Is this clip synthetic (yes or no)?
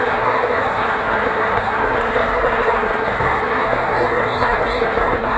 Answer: yes